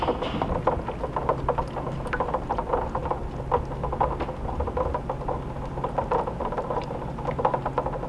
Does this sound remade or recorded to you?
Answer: recorded